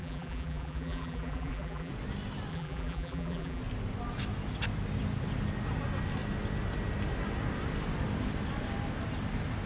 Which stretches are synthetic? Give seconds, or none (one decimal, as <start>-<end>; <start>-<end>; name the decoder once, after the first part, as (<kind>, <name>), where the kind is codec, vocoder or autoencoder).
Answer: 0.0-1.9 (vocoder, BigVGAN v2); 2.5-3.6

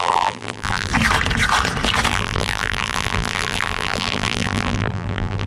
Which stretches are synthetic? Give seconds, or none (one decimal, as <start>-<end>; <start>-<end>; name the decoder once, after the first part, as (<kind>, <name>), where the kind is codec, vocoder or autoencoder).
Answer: 0.0-0.9 (vocoder, BigVGAN v2); 2.1-5.5

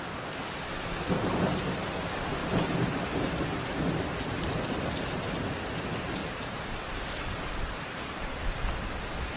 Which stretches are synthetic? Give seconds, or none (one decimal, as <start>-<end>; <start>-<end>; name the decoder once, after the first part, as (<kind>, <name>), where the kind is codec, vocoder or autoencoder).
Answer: 2.4-3.2 (vocoder, BigVGAN v2); 6.2-7.5

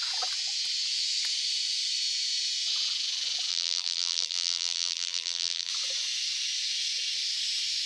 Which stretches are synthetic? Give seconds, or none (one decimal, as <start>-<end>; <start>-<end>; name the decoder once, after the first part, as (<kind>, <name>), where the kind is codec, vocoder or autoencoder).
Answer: 3.5-5.7 (vocoder, BigVGAN v2)

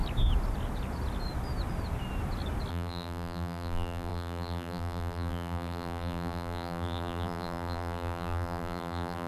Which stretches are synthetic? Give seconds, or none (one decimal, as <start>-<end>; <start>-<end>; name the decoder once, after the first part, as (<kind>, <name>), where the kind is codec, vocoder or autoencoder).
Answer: 2.7-9.3 (vocoder, BigVGAN v2)

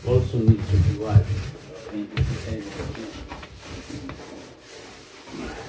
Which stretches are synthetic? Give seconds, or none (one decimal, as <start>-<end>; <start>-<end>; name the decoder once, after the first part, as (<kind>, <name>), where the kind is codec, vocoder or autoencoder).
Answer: 2.7-3.9 (vocoder, BigVGAN v2)

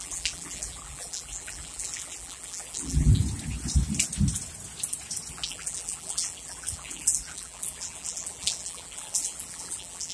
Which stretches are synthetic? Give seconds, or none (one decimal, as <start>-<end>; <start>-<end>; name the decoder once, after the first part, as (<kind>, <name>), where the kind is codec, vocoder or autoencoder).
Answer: 0.0-3.2 (vocoder, BigVGAN v2); 5.3-10.1

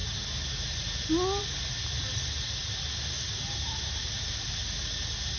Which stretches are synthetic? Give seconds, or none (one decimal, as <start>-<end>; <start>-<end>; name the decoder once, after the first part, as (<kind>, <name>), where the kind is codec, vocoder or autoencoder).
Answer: none